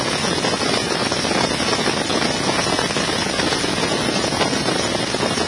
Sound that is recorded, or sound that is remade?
recorded